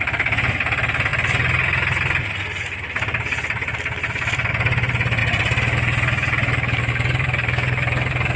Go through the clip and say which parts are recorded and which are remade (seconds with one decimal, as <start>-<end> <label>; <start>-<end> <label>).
0.0-8.4 recorded

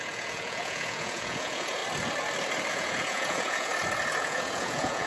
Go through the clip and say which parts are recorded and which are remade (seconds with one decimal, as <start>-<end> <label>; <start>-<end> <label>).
0.0-1.8 remade; 1.8-2.7 recorded; 2.7-3.7 remade; 3.7-4.2 recorded; 4.2-5.1 remade

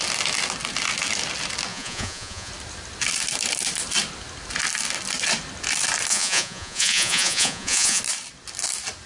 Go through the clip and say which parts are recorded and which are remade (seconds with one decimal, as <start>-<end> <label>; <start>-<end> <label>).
0.0-1.7 recorded; 1.7-2.5 remade; 2.5-6.1 recorded; 6.1-8.0 remade; 8.0-9.1 recorded

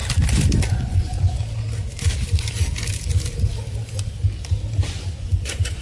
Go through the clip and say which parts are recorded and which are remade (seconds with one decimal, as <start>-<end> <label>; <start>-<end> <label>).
0.0-0.7 recorded; 0.7-1.4 remade; 1.4-4.9 recorded; 4.9-5.8 remade

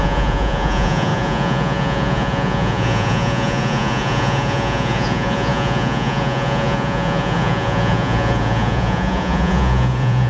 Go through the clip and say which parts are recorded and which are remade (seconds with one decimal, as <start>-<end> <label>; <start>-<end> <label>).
0.0-10.3 remade